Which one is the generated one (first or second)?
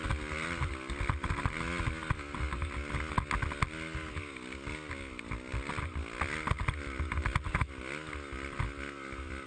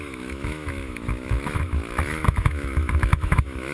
second